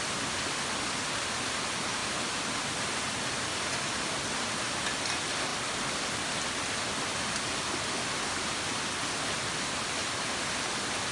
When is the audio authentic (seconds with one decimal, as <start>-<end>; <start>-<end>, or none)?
0.0-11.1